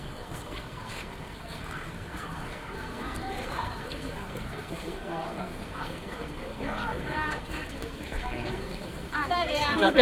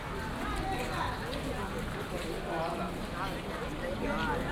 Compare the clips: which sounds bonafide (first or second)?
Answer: second